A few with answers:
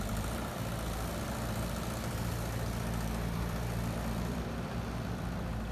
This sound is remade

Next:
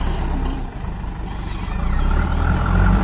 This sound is remade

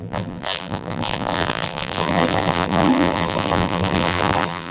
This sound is remade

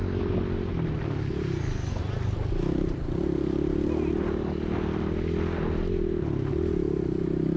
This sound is recorded